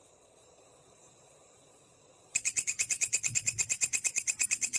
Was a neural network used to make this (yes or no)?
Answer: yes